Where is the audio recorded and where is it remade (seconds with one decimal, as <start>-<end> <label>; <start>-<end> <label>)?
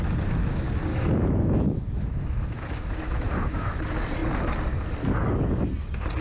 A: 0.0-0.9 recorded; 0.9-3.8 remade; 3.8-6.2 recorded